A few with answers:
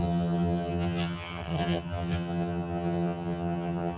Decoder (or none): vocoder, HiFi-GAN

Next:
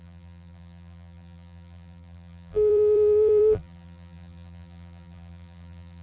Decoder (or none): vocoder, BigVGAN v2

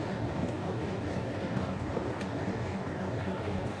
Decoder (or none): codec, DAC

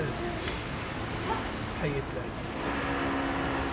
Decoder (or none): none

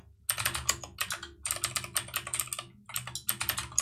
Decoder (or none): none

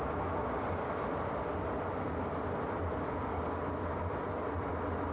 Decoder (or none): none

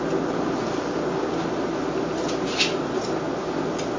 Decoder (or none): none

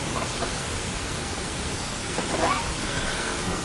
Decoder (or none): codec, SNAC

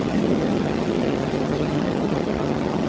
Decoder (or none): vocoder, HiFi-GAN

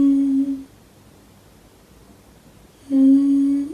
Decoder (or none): none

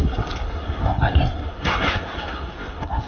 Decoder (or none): codec, SNAC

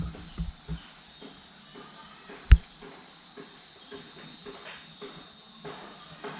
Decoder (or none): none